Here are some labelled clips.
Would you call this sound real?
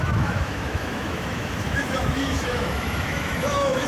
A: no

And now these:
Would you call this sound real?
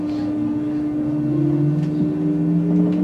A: yes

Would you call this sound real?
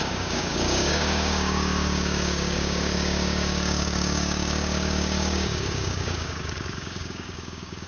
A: no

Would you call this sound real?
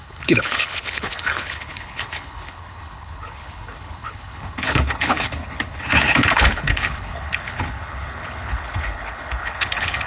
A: no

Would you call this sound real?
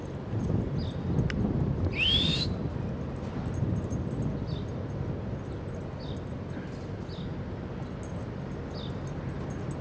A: yes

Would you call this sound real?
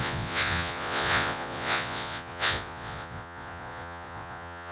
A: no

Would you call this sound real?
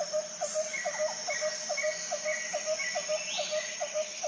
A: yes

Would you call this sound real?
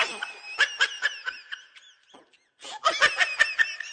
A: yes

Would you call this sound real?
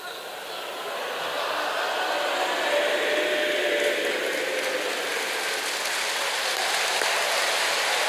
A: yes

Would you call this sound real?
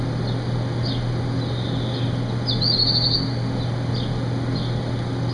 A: yes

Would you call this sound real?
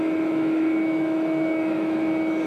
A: no